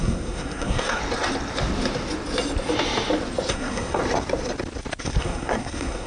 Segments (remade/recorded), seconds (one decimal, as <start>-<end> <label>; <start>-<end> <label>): 0.0-1.0 remade; 1.0-3.5 recorded; 3.5-4.0 remade; 4.0-5.0 recorded; 5.0-6.1 remade